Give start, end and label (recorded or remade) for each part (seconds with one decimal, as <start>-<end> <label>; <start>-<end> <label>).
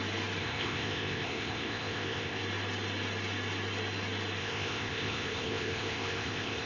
0.0-0.4 recorded; 0.4-2.4 remade; 2.4-4.4 recorded; 4.4-6.7 remade